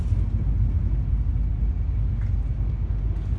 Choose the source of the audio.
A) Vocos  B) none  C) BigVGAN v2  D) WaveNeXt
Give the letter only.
B